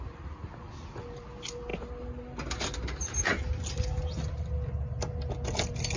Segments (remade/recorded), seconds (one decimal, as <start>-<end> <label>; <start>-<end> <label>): 0.0-6.0 recorded

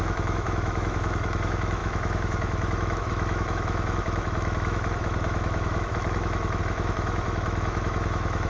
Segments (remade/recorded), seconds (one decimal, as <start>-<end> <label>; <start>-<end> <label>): 0.0-8.5 remade

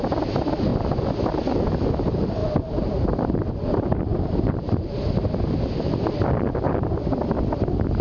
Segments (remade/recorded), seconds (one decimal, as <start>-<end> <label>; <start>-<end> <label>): 0.0-8.0 recorded

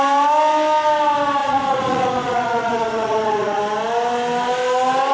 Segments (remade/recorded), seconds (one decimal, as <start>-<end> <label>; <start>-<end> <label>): 0.0-1.4 recorded; 1.4-3.6 remade; 3.6-5.1 recorded